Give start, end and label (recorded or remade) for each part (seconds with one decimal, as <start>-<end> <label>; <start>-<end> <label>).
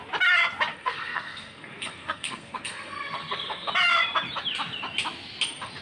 0.0-0.7 recorded; 0.7-3.7 remade; 3.7-5.8 recorded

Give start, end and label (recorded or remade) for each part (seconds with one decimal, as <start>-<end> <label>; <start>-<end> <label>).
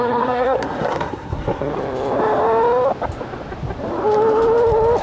0.0-1.7 remade; 1.7-5.0 recorded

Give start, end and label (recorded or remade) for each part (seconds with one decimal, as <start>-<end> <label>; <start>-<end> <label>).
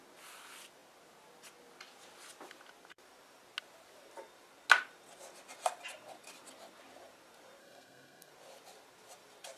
0.0-7.6 recorded; 7.6-8.3 remade; 8.3-9.6 recorded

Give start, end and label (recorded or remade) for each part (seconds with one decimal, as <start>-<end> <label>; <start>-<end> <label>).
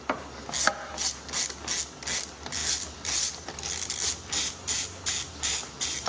0.0-6.1 recorded